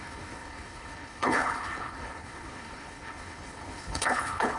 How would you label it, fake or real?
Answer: fake